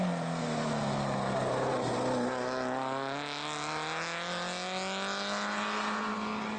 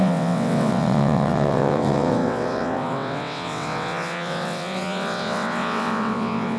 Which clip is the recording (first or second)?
first